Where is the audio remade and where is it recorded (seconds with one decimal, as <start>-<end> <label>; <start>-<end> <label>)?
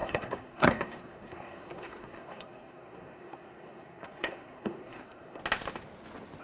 0.0-5.4 remade; 5.4-6.4 recorded